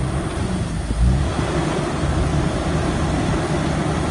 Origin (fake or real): real